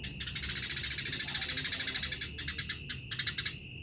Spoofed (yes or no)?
no